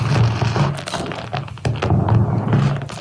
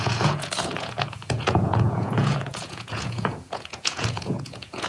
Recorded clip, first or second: first